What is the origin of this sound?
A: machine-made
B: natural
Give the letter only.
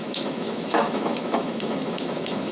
A